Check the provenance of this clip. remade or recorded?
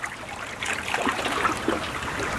recorded